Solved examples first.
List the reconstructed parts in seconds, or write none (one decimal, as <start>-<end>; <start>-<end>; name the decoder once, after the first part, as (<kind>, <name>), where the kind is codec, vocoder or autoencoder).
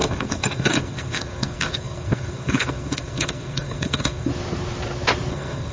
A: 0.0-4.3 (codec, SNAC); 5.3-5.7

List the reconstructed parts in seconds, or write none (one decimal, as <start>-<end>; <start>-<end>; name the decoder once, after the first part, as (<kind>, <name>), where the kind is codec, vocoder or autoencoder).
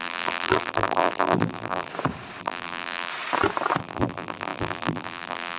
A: 0.0-1.9 (vocoder, BigVGAN v2); 2.4-3.1; 3.8-5.6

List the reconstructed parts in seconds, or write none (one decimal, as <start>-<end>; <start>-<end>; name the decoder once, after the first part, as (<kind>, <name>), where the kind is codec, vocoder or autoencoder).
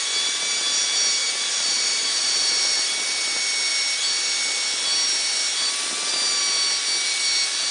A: 1.2-2.9 (vocoder, BigVGAN v2)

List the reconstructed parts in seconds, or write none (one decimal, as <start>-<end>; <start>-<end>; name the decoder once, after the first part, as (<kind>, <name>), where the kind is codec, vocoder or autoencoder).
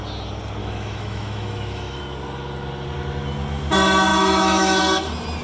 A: 0.6-2.0 (autoencoder, DAC-VAE); 4.1-4.8